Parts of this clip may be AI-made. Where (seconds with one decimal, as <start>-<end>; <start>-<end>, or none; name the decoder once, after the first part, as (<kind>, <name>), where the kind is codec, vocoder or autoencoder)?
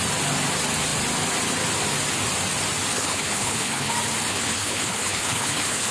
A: 2.9-3.9 (codec, HILCodec); 4.3-5.9